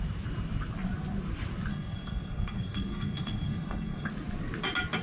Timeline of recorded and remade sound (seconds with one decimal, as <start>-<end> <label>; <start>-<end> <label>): 0.0-1.7 recorded; 1.7-4.1 remade; 4.1-5.0 recorded